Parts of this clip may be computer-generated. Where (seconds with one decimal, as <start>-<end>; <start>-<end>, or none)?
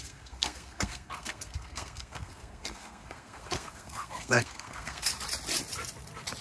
0.0-5.1